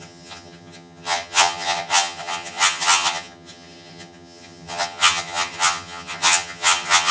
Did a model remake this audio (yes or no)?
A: yes